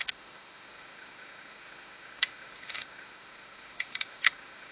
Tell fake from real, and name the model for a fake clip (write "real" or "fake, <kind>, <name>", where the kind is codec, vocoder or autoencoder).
fake, autoencoder, DAC-VAE